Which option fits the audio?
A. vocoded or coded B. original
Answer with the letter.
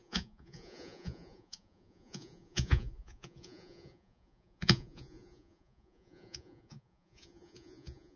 A